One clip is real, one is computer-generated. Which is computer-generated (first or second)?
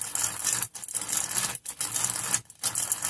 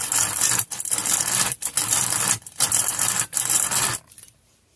second